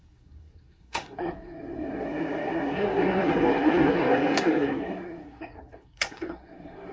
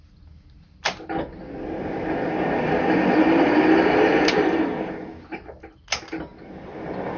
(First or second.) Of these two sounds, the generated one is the first